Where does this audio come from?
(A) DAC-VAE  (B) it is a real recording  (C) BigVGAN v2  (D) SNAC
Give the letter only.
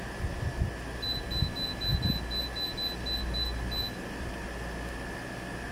B